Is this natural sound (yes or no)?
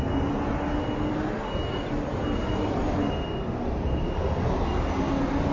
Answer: yes